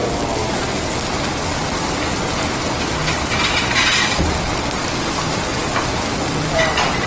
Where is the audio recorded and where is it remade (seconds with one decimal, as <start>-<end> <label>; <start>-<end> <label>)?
0.0-7.1 recorded